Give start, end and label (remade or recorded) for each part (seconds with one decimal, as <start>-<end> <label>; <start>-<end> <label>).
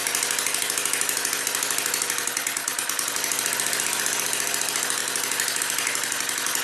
0.0-6.6 recorded